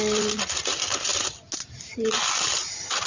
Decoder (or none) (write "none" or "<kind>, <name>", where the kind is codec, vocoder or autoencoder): none